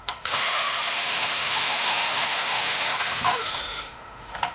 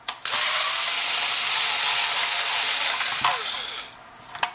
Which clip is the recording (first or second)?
second